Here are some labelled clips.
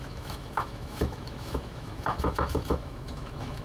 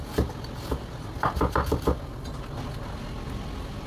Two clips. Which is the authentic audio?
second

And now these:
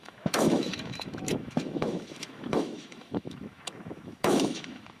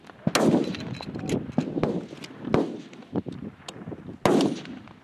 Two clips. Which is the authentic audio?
second